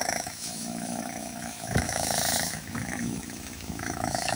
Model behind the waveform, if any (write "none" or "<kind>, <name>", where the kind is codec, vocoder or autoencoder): autoencoder, DAC-VAE